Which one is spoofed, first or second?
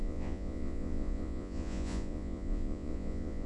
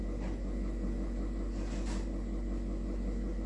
first